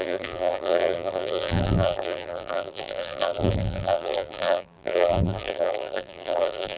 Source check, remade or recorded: remade